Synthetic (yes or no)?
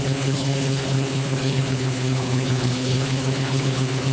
yes